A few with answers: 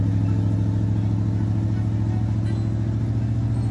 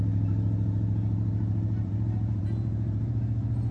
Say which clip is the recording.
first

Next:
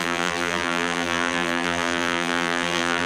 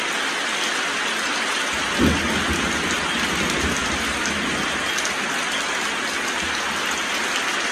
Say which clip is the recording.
second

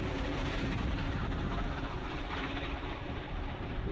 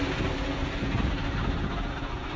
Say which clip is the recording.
second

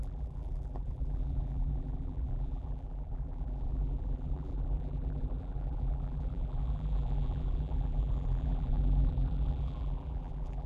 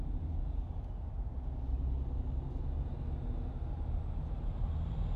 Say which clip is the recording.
second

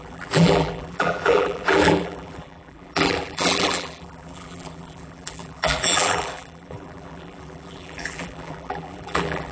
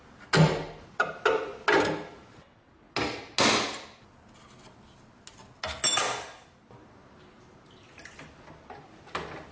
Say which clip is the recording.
second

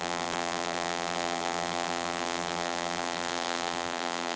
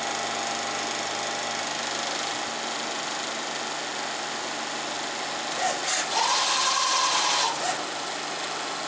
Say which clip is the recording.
second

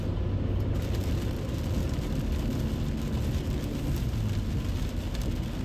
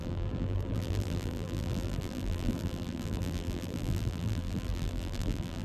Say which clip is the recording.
first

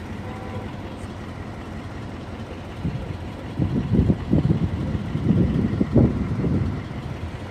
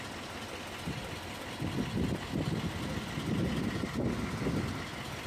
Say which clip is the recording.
second